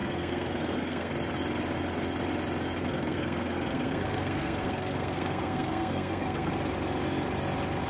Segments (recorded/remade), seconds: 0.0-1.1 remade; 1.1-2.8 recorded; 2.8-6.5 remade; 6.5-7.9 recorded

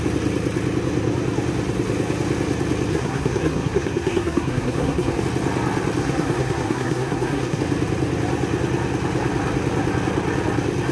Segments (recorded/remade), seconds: 0.0-2.9 recorded; 2.9-5.2 remade; 5.2-6.0 recorded; 6.0-7.6 remade; 7.6-10.9 recorded

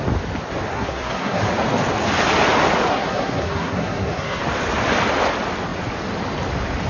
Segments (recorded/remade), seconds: 0.0-0.7 recorded; 0.7-1.4 remade; 1.4-2.9 recorded; 2.9-4.4 remade; 4.4-6.9 recorded

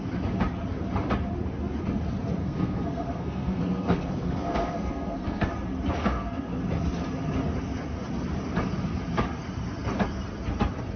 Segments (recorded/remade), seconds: 0.0-2.4 recorded; 2.4-5.5 remade; 5.5-6.0 recorded; 6.0-6.6 remade; 6.6-11.0 recorded

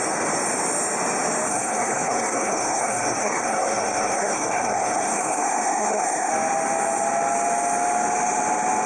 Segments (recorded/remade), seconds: 0.0-1.5 recorded; 1.5-6.3 remade; 6.3-8.9 recorded

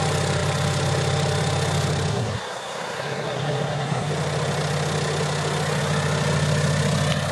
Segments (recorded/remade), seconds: 0.0-2.1 recorded; 2.1-4.1 remade; 4.1-7.3 recorded

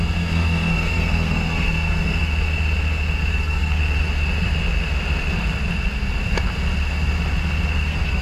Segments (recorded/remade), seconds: 0.0-2.3 remade; 2.3-3.3 recorded; 3.3-3.8 remade; 3.8-7.7 recorded; 7.7-8.2 remade

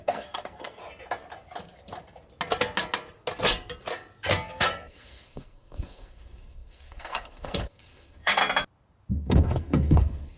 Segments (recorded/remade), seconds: 0.0-0.8 remade; 0.8-4.3 recorded; 4.3-8.4 remade; 8.4-9.1 recorded; 9.1-10.4 remade